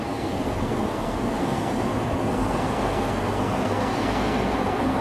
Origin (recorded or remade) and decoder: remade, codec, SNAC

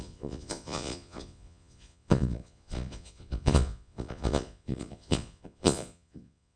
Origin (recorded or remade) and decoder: remade, vocoder, Vocos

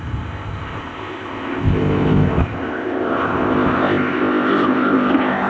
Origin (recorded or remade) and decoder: remade, codec, ZipCodec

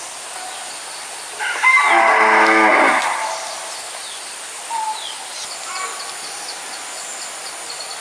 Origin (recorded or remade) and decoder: recorded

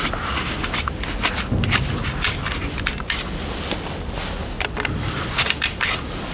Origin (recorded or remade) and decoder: recorded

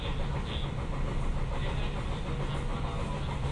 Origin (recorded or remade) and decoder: recorded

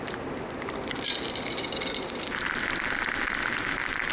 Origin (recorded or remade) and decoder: recorded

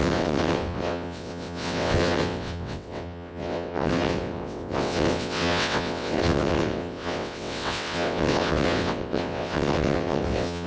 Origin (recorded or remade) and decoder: remade, vocoder, WaveNeXt